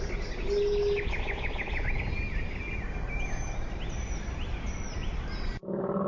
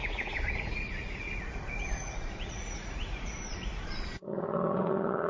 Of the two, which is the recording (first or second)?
first